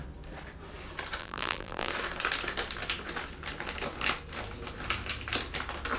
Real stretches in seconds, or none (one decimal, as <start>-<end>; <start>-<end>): 0.0-1.2; 1.9-6.0